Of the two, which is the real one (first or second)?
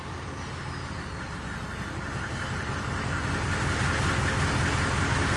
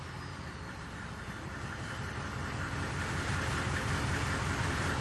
first